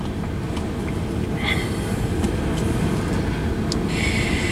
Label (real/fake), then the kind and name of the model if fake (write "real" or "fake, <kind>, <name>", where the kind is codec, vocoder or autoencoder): real